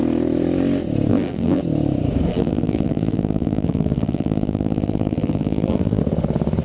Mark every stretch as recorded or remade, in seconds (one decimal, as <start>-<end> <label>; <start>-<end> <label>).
0.0-1.1 recorded; 1.1-1.6 remade; 1.6-2.3 recorded; 2.3-6.0 remade; 6.0-6.6 recorded